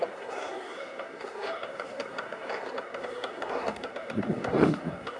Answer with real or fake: fake